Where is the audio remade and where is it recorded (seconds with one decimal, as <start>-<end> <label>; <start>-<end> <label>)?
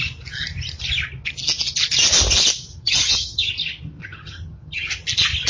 0.0-2.7 recorded; 2.7-3.5 remade; 3.5-4.0 recorded; 4.0-5.0 remade; 5.0-5.5 recorded